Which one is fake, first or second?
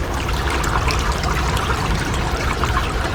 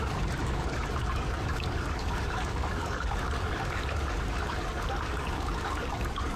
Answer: second